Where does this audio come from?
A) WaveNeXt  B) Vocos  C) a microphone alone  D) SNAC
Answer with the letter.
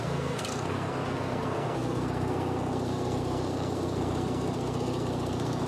D